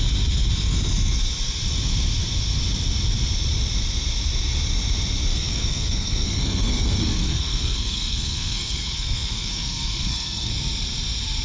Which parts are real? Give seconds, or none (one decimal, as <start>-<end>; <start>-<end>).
0.0-5.3; 10.5-11.4